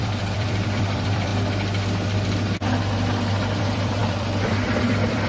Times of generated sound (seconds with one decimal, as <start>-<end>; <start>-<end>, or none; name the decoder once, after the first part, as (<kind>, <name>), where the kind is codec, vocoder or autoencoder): 0.0-1.3 (vocoder, BigVGAN v2); 3.6-5.3